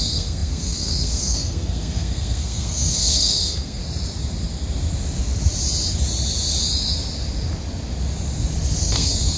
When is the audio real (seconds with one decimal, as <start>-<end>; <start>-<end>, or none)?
3.8-8.8